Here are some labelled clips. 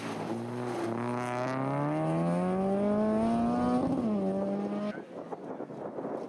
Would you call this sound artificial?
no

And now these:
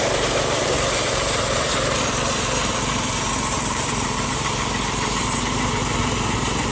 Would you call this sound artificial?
yes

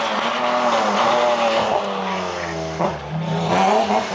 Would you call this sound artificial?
no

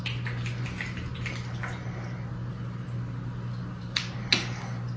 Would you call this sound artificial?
no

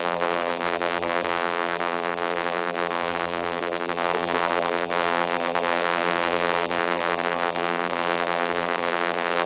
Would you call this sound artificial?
yes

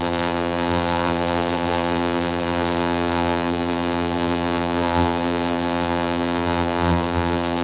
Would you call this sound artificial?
yes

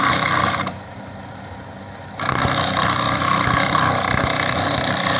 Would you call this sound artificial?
yes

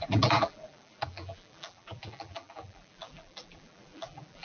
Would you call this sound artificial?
yes